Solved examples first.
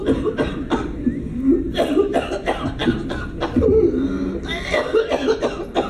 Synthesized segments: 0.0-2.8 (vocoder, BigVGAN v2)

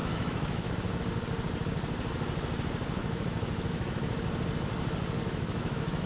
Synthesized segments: 0.0-0.7 (autoencoder, DAC-VAE); 3.0-4.1; 5.2-6.1

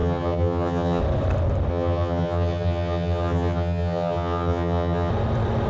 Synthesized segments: 0.0-1.0 (vocoder, HiFi-GAN); 1.7-5.1

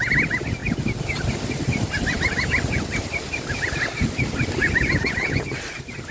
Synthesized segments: none